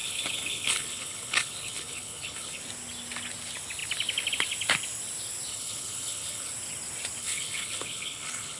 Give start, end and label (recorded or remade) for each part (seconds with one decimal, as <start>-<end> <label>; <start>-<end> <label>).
0.0-2.6 remade; 2.6-5.5 recorded; 5.5-6.5 remade; 6.5-7.2 recorded; 7.2-8.6 remade